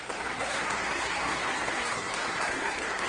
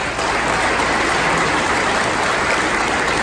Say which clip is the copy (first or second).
first